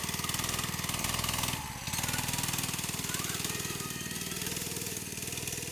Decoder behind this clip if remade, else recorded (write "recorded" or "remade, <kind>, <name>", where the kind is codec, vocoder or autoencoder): recorded